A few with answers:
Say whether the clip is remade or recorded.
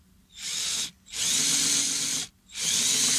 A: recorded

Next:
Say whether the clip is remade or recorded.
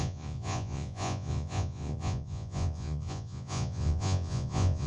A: remade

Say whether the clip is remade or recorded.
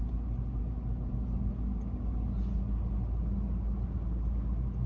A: recorded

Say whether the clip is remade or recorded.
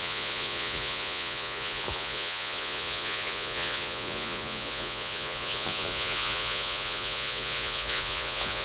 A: remade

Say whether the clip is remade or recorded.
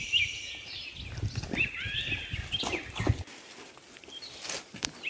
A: recorded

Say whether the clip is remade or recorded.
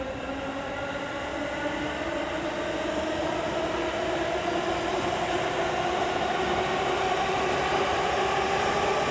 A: recorded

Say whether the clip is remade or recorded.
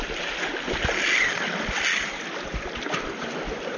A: recorded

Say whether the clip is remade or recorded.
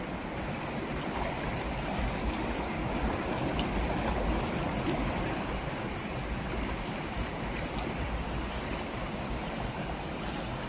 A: recorded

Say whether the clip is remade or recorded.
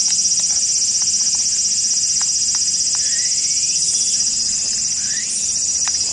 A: recorded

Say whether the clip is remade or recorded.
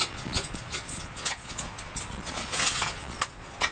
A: remade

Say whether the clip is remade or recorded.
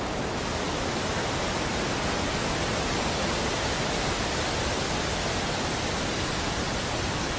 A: recorded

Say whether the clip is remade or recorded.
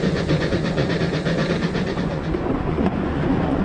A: remade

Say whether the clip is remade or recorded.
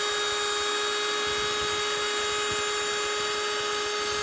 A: recorded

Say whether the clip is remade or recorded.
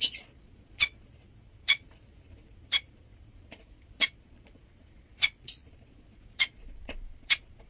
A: remade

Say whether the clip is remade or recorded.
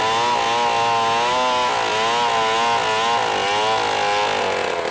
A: recorded